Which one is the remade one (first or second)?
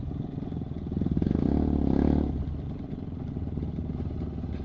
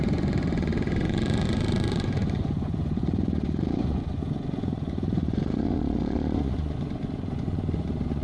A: second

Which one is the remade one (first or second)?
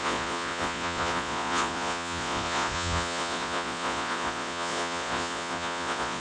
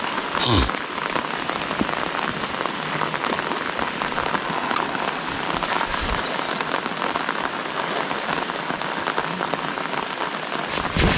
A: first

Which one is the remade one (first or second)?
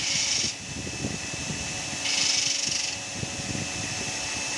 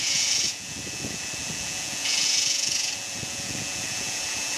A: second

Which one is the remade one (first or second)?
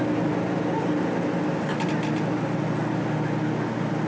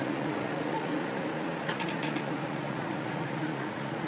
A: second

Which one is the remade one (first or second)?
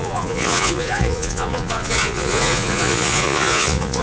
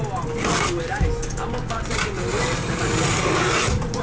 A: first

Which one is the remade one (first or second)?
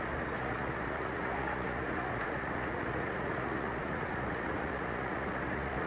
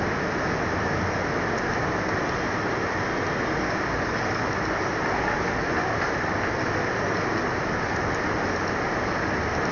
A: first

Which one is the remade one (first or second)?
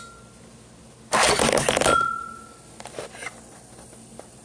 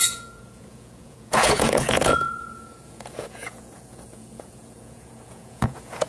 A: second